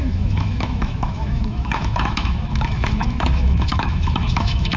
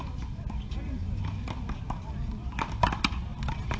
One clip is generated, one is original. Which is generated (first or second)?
first